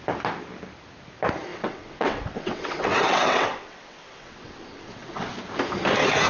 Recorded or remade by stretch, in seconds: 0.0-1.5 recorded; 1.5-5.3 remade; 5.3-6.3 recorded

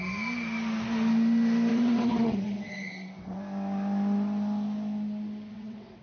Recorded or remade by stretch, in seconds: 0.0-1.7 recorded; 1.7-3.4 remade; 3.4-5.5 recorded; 5.5-6.0 remade

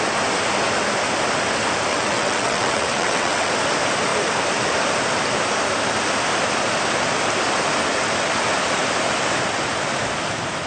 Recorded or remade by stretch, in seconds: 0.0-1.9 recorded; 1.9-3.5 remade; 3.5-10.7 recorded

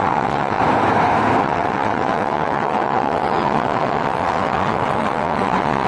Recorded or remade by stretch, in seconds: 0.0-0.6 remade; 0.6-1.4 recorded; 1.4-5.9 remade

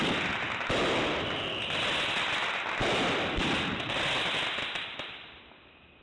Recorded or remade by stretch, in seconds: 0.0-6.0 recorded